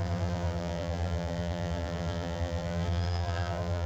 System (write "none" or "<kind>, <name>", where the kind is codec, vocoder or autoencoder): vocoder, BigVGAN v2